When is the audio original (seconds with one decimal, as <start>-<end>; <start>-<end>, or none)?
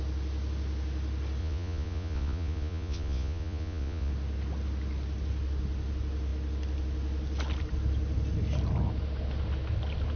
0.0-1.4; 4.1-10.2